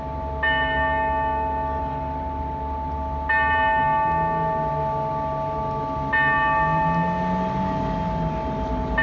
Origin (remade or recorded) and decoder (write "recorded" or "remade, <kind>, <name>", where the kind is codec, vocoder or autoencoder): recorded